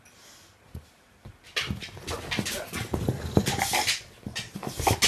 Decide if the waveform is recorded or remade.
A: recorded